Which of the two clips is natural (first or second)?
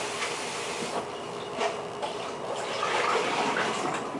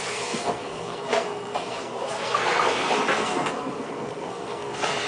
first